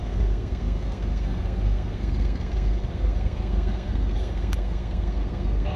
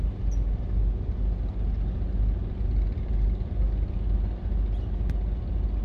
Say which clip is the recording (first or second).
second